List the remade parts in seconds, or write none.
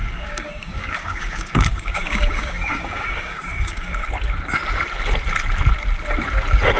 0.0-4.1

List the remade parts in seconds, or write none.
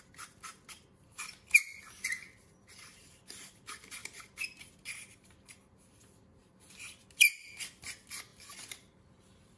none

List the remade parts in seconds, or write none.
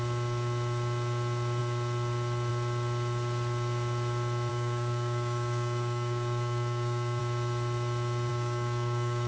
4.5-7.2; 8.3-9.3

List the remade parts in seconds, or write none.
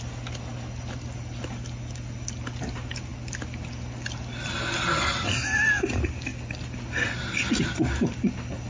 none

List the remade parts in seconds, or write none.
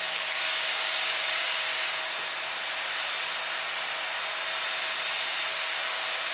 0.0-1.7; 5.5-6.3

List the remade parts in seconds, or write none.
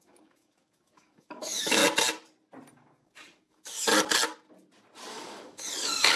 0.0-1.8; 2.7-3.9; 5.1-6.2